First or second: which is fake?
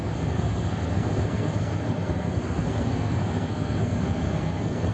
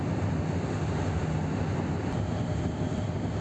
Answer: first